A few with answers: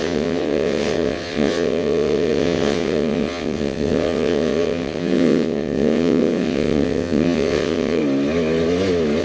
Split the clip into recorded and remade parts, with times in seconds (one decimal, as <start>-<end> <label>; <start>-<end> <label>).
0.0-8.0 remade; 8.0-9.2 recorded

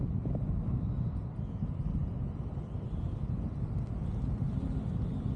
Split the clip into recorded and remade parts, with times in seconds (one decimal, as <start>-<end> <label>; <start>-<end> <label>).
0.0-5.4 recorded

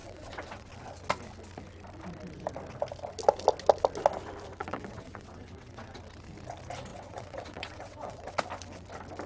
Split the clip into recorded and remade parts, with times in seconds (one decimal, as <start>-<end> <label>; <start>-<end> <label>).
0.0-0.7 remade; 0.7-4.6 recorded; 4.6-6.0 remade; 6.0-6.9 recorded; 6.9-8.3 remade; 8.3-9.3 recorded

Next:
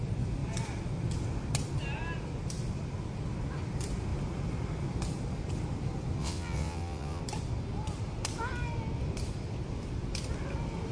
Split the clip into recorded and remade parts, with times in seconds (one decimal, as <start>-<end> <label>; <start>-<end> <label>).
0.0-6.2 recorded; 6.2-7.2 remade; 7.2-10.9 recorded

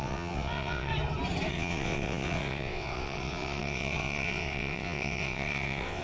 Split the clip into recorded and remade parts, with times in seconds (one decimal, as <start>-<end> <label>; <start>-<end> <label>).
0.0-0.9 remade; 0.9-1.5 recorded; 1.5-6.0 remade

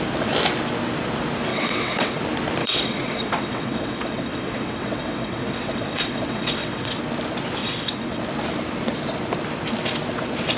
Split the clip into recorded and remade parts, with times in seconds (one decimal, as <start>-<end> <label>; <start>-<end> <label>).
0.0-1.5 recorded; 1.5-2.2 remade; 2.2-2.6 recorded; 2.6-7.0 remade; 7.0-7.6 recorded; 7.6-8.2 remade; 8.2-10.6 recorded

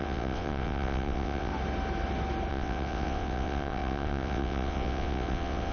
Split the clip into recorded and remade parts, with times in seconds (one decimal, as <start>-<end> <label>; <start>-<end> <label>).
0.0-1.5 remade; 1.5-2.5 recorded; 2.5-5.7 remade